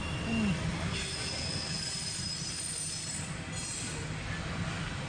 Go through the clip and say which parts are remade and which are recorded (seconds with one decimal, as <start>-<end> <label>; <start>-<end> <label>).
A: 0.0-5.1 recorded